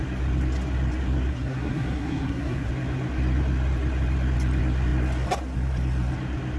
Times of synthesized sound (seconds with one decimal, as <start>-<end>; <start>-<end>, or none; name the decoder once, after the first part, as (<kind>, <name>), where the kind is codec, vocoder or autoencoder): 1.3-2.7 (codec, SNAC)